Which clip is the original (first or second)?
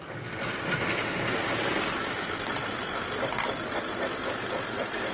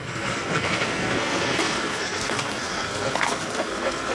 first